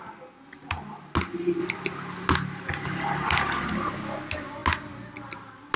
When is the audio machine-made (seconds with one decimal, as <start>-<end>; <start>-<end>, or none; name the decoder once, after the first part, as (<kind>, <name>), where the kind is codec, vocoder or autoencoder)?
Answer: none